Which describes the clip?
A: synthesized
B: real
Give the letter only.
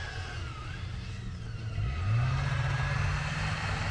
B